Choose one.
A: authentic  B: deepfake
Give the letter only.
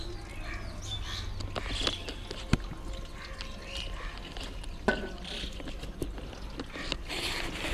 A